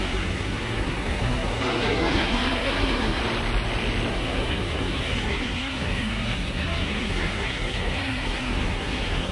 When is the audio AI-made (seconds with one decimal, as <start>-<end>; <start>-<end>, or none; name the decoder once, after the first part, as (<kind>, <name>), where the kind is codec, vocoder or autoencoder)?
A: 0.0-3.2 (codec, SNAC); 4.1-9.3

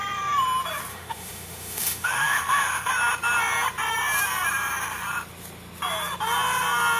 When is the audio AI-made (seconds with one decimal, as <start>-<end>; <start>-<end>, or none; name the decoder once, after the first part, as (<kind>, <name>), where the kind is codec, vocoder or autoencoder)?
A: 0.9-2.9 (autoencoder, DAC-VAE)

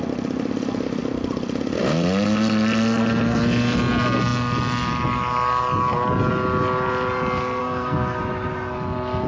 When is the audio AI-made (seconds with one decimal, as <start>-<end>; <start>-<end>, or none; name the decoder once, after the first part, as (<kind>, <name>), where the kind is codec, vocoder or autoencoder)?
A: 7.6-8.2 (codec, SNAC)

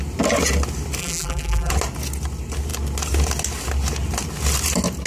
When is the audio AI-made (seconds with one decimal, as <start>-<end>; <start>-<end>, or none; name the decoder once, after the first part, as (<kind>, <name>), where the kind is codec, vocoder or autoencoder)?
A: 1.0-1.7 (vocoder, BigVGAN v2)

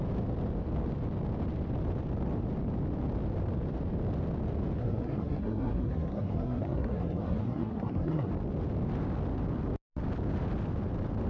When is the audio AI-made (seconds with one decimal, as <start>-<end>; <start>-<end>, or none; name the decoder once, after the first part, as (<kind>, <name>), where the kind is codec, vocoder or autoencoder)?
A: 4.8-8.3 (codec, SNAC)